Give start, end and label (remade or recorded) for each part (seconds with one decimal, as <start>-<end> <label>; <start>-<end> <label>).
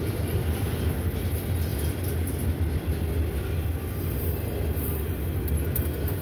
0.0-6.2 recorded